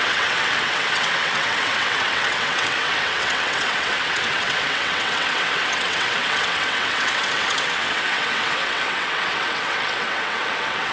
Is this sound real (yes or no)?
no